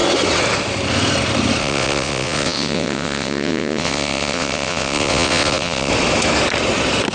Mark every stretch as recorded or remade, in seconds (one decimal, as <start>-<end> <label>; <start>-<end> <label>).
0.0-1.6 recorded; 1.6-5.9 remade; 5.9-7.1 recorded